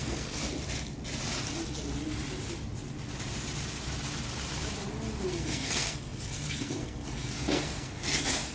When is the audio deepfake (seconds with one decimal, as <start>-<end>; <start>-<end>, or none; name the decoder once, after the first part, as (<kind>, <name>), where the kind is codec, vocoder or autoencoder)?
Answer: 0.0-0.4 (codec, SNAC); 5.3-8.5